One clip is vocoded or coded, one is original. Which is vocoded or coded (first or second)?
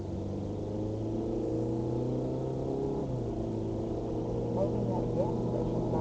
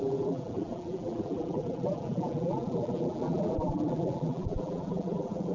second